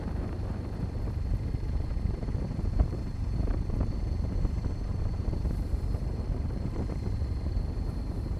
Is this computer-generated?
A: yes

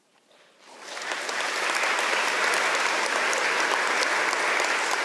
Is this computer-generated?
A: no